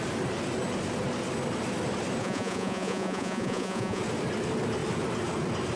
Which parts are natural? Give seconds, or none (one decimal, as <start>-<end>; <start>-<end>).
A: 0.0-2.2; 4.0-5.8